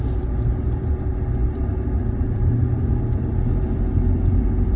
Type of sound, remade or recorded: remade